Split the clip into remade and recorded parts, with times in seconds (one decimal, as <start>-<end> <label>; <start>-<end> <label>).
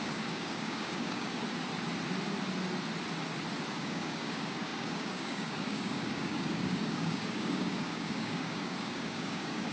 0.0-1.4 remade; 1.4-3.7 recorded; 3.7-9.7 remade